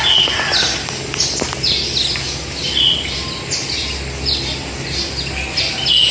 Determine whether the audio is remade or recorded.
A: recorded